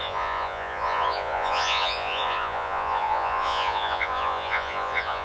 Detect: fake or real fake